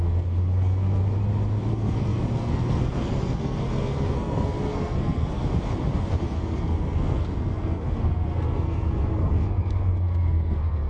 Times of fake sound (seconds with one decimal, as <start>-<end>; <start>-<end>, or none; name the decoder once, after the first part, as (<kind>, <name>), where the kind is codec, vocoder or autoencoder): 0.0-1.0 (codec, SNAC); 1.7-5.4; 6.0-10.9